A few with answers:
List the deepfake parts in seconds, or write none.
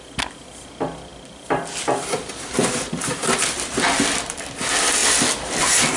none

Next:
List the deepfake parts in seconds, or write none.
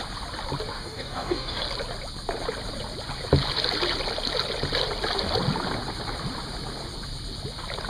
0.7-1.6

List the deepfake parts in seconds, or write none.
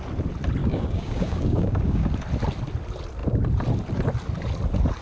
0.6-2.1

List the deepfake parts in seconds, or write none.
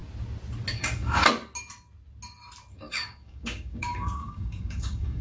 0.7-1.2; 2.7-5.2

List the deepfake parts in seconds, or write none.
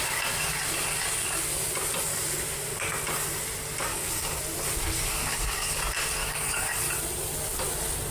3.9-4.4; 5.1-5.8; 6.2-6.8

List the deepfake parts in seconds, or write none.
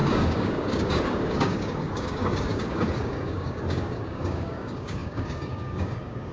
0.0-6.3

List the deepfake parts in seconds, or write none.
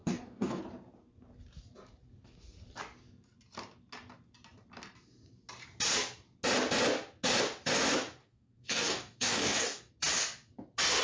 0.0-0.6; 8.2-9.9